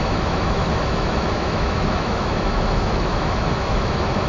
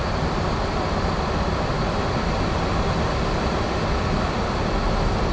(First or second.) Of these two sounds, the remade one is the first